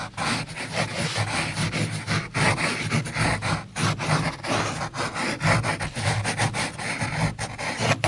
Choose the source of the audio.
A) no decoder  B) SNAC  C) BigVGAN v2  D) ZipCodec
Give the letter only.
A